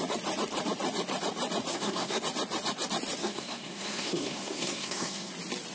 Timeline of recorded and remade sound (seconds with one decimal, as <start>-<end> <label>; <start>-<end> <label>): 0.0-1.7 recorded; 1.7-2.2 remade; 2.2-3.2 recorded; 3.2-5.3 remade; 5.3-5.7 recorded